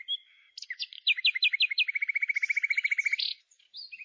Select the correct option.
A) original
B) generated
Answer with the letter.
A